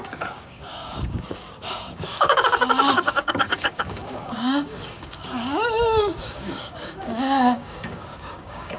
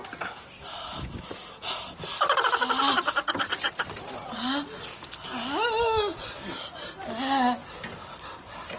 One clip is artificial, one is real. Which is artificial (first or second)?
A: first